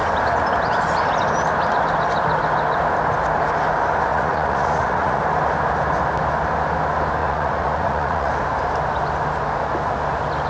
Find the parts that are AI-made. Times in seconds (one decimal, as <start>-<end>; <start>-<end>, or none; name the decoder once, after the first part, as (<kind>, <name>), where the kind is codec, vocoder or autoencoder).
4.1-5.2 (vocoder, Vocos); 7.2-8.3